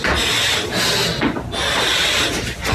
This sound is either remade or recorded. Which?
recorded